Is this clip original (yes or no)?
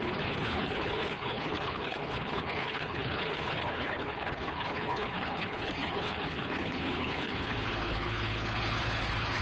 no